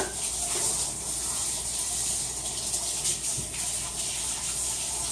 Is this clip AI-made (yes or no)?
no